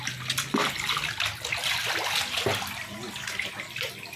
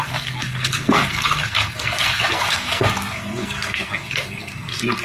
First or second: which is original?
first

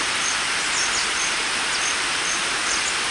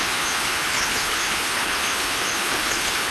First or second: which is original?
first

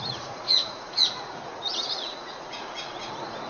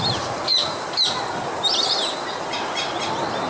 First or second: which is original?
second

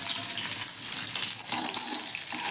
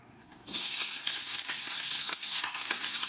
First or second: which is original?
first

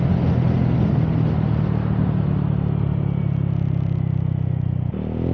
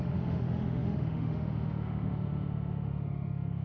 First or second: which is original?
first